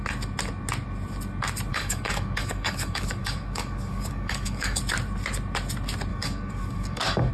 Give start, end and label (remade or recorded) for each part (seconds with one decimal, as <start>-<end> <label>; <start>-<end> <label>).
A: 0.0-1.7 recorded; 1.7-4.8 remade; 4.8-6.1 recorded; 6.1-7.3 remade